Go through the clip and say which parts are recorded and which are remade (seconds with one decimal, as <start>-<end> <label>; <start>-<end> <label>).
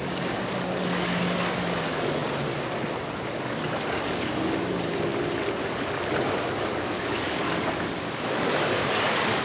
0.0-2.2 remade; 2.2-3.3 recorded; 3.3-5.1 remade; 5.1-6.6 recorded; 6.6-9.4 remade